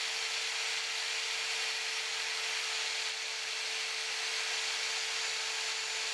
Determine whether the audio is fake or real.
real